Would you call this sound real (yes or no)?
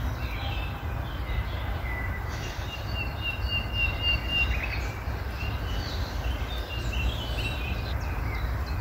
yes